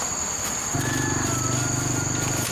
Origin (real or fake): real